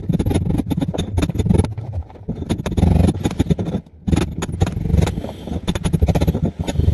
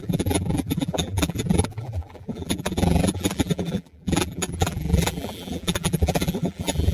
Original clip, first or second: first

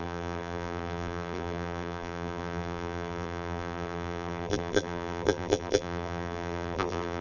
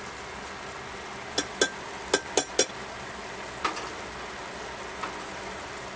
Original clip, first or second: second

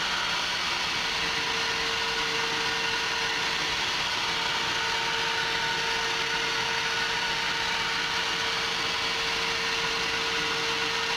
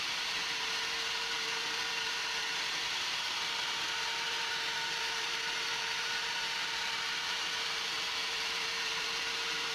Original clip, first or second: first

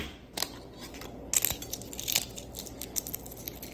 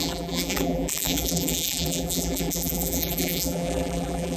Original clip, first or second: first